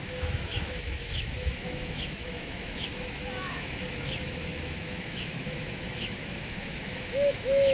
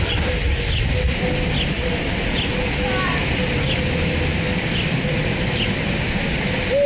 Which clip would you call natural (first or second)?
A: second